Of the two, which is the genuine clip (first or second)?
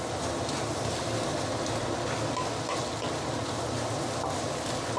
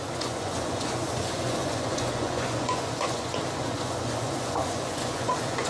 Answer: first